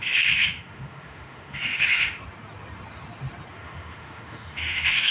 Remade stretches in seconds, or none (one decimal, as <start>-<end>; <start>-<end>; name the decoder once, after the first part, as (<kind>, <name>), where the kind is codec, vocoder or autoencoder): 0.0-2.2 (autoencoder, DAC-VAE); 3.5-5.1